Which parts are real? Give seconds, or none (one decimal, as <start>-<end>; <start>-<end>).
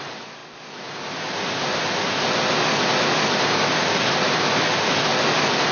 0.4-3.8; 5.1-5.7